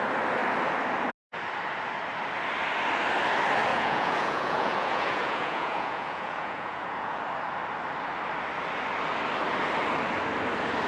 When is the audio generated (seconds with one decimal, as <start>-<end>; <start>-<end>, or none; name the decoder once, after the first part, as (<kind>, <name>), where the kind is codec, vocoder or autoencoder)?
3.7-7.2 (vocoder, Vocos)